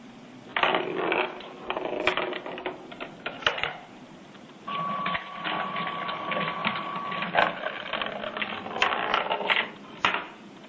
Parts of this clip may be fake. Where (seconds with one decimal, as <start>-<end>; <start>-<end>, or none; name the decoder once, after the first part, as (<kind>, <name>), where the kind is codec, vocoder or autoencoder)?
none